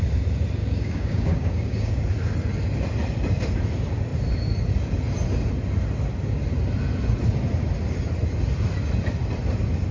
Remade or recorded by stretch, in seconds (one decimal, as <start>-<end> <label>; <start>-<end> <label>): 0.0-0.6 recorded; 0.6-2.0 remade; 2.0-9.9 recorded